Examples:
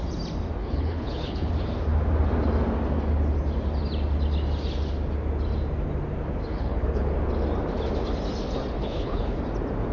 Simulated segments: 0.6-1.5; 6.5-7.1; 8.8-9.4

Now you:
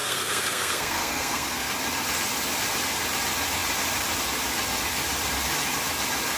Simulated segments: 0.0-1.7